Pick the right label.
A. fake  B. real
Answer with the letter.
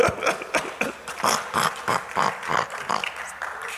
B